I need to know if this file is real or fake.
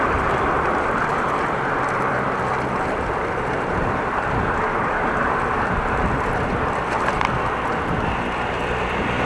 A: fake